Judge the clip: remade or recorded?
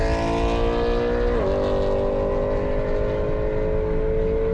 recorded